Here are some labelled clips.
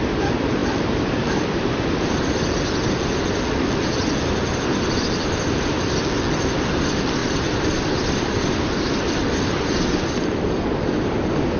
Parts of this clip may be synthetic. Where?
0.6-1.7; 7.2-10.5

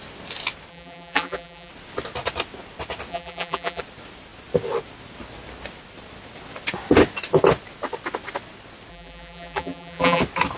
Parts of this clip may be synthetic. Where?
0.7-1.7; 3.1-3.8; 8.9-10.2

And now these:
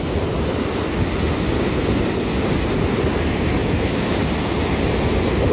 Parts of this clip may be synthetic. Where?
none

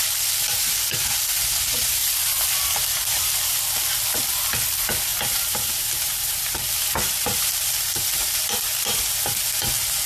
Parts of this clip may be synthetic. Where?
2.0-3.6; 5.1-7.8

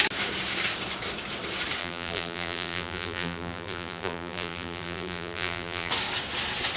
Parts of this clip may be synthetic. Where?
1.8-5.9